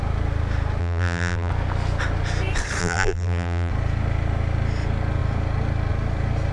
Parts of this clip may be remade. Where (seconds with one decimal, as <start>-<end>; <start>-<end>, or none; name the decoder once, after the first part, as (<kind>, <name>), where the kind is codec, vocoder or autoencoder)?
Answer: 0.8-1.5 (vocoder, BigVGAN v2); 2.8-3.7